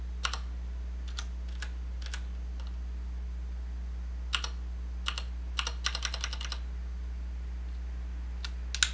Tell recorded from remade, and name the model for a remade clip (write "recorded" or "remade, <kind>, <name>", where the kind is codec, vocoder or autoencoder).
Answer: recorded